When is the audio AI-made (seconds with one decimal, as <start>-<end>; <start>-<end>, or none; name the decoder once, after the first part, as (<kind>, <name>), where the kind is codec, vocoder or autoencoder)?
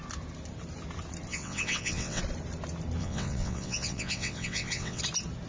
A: 1.3-2.2 (vocoder, WaveNeXt); 3.0-5.0